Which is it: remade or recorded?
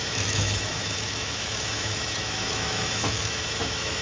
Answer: remade